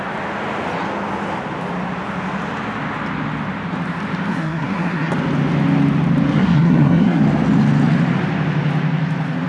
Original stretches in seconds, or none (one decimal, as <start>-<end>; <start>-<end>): 0.0-4.3; 5.1-6.3; 7.2-9.5